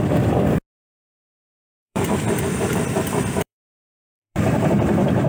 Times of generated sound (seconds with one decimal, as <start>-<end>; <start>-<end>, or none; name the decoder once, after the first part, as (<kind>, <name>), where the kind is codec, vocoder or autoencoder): 1.8-4.6 (vocoder, BigVGAN v2)

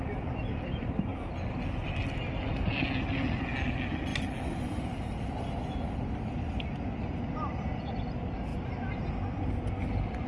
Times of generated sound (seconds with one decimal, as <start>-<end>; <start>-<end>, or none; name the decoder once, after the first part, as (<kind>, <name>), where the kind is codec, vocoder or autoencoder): none

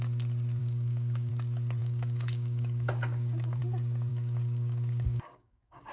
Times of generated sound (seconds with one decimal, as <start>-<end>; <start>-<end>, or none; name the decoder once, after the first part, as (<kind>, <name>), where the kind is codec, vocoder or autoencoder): 0.6-1.3 (codec, DAC); 1.8-3.6; 4.1-5.9